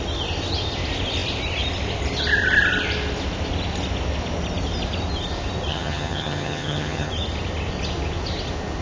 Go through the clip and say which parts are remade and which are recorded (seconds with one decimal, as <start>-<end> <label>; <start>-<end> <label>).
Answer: 0.0-5.7 recorded; 5.7-7.1 remade; 7.1-8.8 recorded